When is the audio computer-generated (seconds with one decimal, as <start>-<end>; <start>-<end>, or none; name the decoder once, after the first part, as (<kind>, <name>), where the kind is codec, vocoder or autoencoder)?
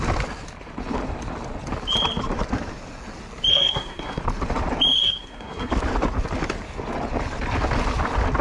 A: 3.5-4.2 (codec, SNAC); 5.0-5.7